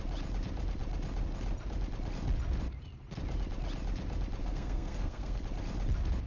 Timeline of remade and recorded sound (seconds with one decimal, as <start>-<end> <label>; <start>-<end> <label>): 0.0-4.4 recorded; 4.4-5.4 remade; 5.4-6.3 recorded